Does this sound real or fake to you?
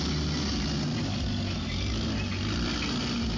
real